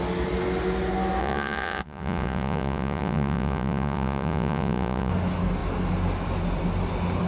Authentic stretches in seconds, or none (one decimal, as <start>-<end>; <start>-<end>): 0.0-1.2; 5.1-7.3